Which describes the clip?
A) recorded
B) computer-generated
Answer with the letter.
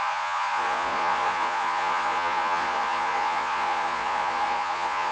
B